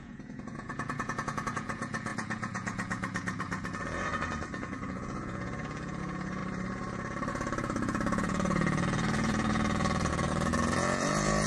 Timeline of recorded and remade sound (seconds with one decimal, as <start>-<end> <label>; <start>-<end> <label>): 0.0-6.4 remade; 6.4-7.3 recorded; 7.3-11.5 remade